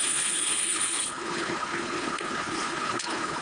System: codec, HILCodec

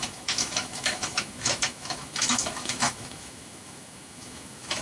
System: autoencoder, DAC-VAE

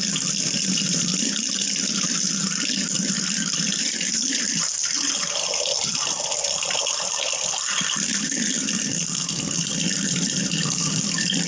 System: none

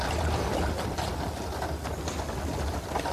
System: none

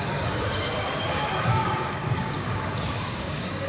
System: codec, DAC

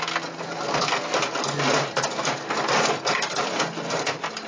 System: none